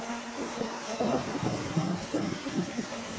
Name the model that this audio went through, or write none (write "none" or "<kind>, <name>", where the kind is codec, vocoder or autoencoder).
codec, SNAC